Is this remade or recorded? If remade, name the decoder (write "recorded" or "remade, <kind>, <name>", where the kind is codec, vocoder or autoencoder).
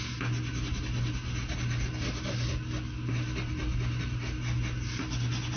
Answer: recorded